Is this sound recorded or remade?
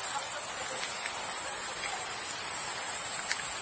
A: recorded